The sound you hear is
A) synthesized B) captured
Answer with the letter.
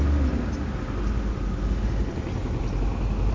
B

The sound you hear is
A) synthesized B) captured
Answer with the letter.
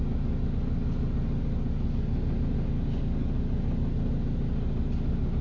B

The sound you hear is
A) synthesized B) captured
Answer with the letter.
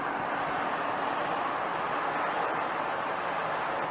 B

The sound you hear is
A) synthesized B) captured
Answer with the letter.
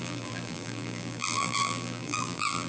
A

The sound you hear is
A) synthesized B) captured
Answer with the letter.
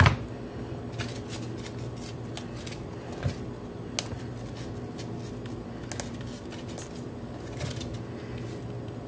B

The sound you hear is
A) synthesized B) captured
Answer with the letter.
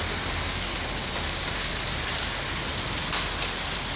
B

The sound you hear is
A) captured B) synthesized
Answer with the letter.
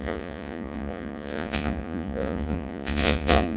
B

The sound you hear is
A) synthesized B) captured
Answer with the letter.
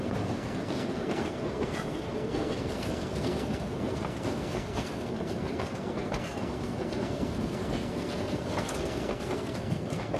A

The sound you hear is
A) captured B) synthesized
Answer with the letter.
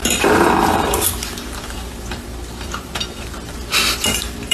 B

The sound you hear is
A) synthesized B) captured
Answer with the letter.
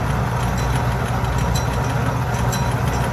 B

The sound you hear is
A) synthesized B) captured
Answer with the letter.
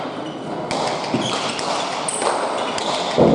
B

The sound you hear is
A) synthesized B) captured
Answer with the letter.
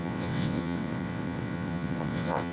A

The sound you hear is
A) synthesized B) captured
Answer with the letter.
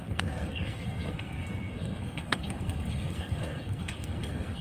A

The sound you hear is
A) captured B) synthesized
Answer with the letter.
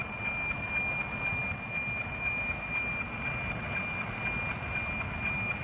A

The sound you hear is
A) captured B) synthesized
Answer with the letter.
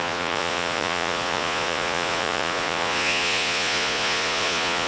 B